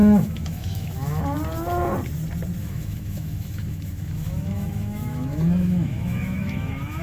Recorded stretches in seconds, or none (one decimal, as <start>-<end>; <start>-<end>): 1.2-2.6